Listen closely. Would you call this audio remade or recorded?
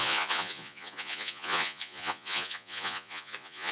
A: remade